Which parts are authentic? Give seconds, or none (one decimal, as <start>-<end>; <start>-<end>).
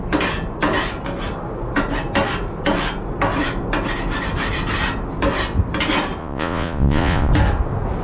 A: 0.0-6.2; 7.3-8.0